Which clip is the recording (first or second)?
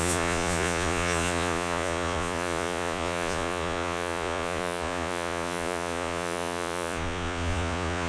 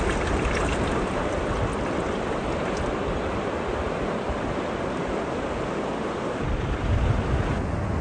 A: second